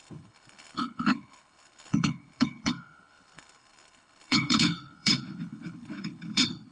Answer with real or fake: fake